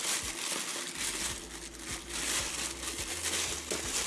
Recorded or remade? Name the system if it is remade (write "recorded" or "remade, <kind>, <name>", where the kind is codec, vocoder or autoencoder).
recorded